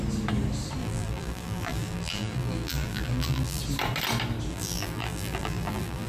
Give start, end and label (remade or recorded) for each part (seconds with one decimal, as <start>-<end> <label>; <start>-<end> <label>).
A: 0.0-0.8 recorded; 0.8-3.6 remade; 3.6-4.5 recorded; 4.5-6.1 remade